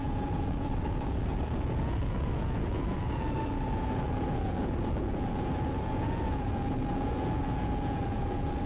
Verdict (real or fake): fake